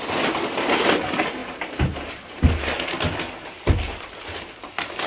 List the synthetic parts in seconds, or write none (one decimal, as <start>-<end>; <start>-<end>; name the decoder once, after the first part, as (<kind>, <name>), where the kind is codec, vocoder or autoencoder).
none

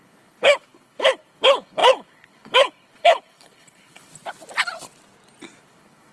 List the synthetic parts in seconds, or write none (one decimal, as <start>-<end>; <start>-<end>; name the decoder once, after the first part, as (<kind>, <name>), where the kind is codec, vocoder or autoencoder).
0.0-4.1 (codec, HILCodec); 5.6-6.1

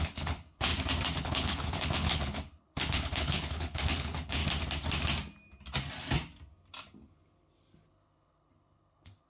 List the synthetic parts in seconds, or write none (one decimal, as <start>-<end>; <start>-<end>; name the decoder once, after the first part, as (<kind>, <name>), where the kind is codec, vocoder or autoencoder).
0.0-0.7 (codec, HILCodec); 1.2-4.4; 7.9-9.3

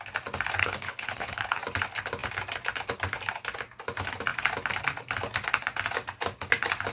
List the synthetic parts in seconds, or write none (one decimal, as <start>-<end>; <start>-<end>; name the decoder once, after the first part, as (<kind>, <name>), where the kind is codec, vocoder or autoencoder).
0.6-1.6 (codec, HILCodec)

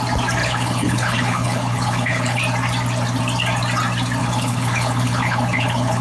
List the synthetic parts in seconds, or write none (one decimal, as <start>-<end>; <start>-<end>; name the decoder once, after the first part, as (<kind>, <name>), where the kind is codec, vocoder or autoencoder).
0.4-2.4 (codec, HILCodec); 4.2-6.0

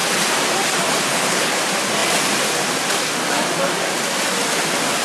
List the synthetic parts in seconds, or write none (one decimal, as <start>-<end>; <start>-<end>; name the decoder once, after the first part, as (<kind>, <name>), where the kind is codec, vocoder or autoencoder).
1.1-1.6 (codec, HILCodec)

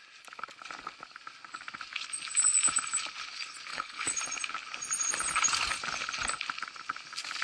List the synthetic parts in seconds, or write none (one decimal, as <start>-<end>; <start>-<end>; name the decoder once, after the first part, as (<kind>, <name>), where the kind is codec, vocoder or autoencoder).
3.7-4.2 (codec, HILCodec)

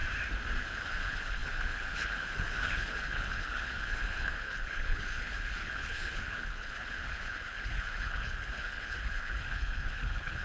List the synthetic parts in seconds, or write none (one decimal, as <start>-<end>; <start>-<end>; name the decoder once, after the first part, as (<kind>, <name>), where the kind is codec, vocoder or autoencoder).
0.6-10.4 (codec, HILCodec)